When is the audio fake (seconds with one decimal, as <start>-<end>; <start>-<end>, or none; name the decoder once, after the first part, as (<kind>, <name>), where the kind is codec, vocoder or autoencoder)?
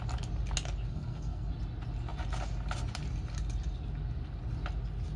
0.9-1.5 (codec, SNAC)